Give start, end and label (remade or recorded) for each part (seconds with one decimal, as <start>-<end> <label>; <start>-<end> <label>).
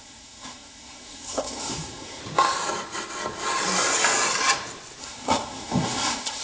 0.0-2.2 remade; 2.2-5.0 recorded; 5.0-6.4 remade